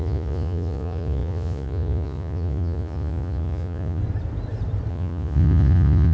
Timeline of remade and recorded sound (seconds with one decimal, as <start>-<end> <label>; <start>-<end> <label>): 0.0-4.0 remade; 4.0-4.9 recorded; 4.9-6.1 remade